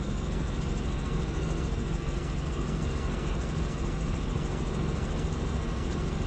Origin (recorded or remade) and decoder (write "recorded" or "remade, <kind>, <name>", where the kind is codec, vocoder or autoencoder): remade, codec, SNAC